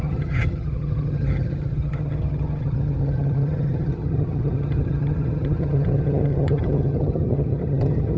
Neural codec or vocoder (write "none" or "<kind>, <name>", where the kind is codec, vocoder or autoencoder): vocoder, HiFi-GAN